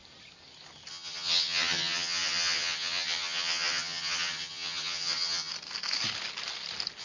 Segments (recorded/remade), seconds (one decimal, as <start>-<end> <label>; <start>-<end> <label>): 0.0-0.9 recorded; 0.9-5.5 remade; 5.5-7.0 recorded

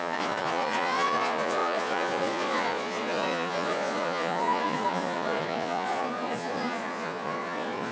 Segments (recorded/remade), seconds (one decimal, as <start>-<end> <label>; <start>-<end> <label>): 0.0-7.9 remade

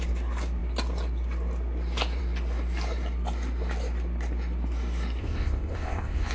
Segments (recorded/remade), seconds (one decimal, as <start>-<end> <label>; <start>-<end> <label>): 0.0-5.2 recorded; 5.2-6.3 remade

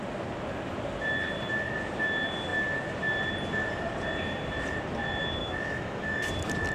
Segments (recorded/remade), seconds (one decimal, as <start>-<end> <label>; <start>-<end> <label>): 0.0-5.4 recorded; 5.4-6.3 remade; 6.3-6.7 recorded

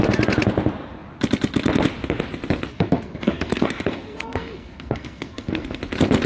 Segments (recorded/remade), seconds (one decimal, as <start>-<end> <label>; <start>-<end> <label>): 0.0-2.7 recorded; 2.7-5.8 remade; 5.8-6.3 recorded

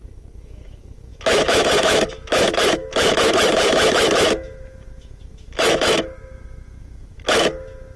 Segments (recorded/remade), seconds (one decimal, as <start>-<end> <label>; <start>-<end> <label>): 0.0-8.0 remade

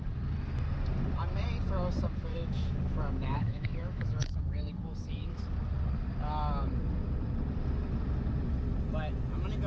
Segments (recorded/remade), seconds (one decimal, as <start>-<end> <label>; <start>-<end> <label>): 0.0-2.3 recorded; 2.3-5.4 remade; 5.4-9.7 recorded

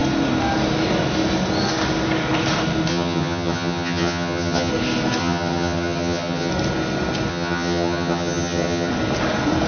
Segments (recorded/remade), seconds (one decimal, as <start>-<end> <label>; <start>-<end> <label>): 0.0-2.9 recorded; 2.9-4.7 remade; 4.7-5.2 recorded; 5.2-6.5 remade; 6.5-7.3 recorded; 7.3-8.9 remade; 8.9-9.7 recorded